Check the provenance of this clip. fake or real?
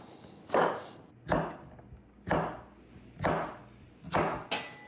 real